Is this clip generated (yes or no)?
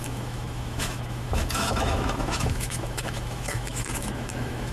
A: yes